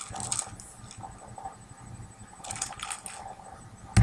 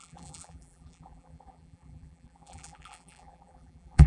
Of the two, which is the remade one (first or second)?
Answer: second